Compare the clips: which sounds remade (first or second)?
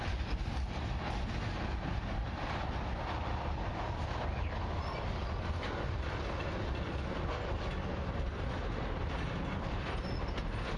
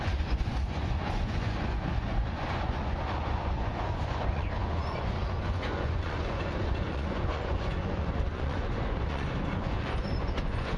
second